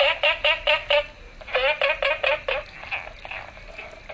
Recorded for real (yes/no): yes